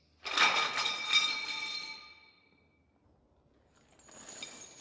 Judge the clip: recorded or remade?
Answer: recorded